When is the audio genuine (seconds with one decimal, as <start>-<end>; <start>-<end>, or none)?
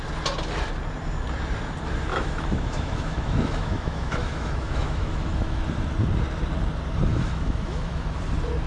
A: 0.0-2.1; 5.6-7.1; 8.2-8.7